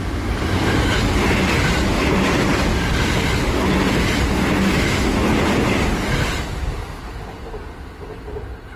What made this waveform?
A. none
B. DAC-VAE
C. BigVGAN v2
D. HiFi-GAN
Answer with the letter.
A